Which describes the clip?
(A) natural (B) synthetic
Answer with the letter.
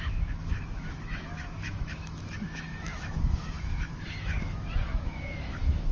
B